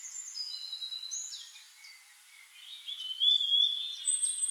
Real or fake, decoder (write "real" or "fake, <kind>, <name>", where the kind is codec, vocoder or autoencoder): real